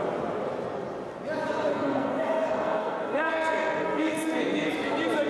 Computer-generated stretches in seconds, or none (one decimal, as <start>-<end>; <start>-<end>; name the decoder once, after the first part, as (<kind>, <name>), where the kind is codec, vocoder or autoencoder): 1.7-4.7 (codec, SNAC)